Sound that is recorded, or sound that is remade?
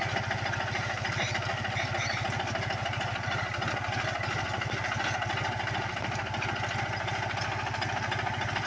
recorded